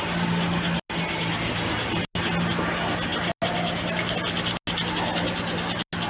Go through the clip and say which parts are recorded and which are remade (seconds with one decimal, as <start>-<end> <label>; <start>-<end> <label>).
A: 0.0-6.1 recorded